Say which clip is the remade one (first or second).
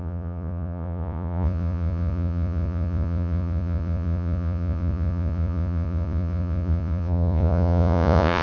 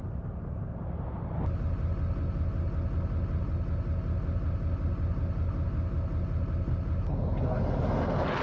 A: first